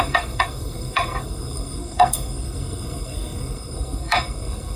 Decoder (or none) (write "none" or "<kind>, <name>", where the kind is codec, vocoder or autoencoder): codec, SNAC